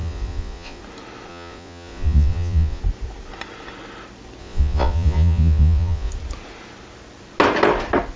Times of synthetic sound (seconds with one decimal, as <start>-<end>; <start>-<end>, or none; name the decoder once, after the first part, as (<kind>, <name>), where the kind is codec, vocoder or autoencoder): 0.0-0.8 (vocoder, Vocos); 1.3-2.8; 4.4-6.1